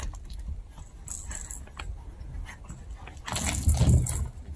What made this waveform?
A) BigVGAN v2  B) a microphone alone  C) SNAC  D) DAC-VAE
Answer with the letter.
B